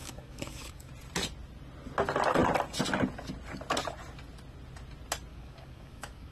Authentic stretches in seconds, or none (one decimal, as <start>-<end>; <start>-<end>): 0.9-5.3